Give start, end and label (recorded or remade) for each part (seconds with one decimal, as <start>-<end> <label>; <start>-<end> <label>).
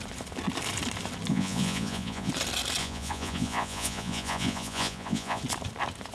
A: 0.0-1.3 recorded; 1.3-2.3 remade; 2.3-2.8 recorded; 2.8-5.4 remade; 5.4-6.1 recorded